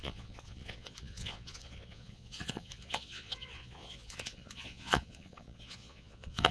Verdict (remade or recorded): remade